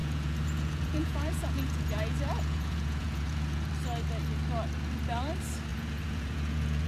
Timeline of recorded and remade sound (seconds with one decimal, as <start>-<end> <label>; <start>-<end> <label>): 0.0-3.7 remade; 3.7-5.7 recorded; 5.7-6.9 remade